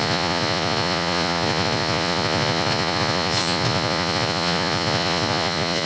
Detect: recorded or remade remade